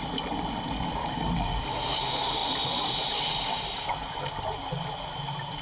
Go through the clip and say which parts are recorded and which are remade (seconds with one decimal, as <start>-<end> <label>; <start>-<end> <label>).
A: 0.0-1.0 recorded; 1.0-1.6 remade; 1.6-5.6 recorded